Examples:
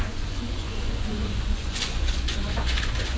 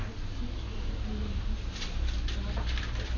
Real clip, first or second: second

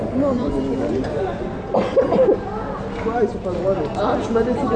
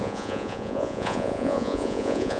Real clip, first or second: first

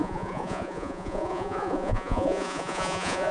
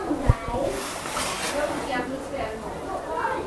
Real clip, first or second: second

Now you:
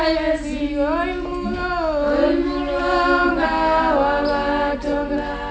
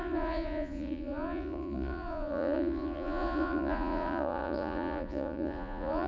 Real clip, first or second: first